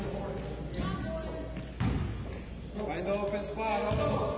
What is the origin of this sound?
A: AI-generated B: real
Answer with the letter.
B